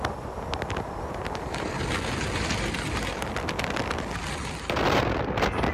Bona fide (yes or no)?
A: yes